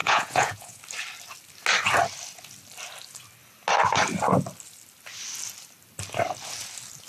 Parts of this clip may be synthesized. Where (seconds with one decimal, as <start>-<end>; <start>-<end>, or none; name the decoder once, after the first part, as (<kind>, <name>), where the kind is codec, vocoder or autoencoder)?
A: 0.0-0.8 (vocoder, Vocos)